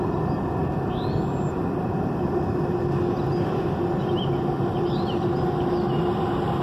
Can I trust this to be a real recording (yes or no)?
yes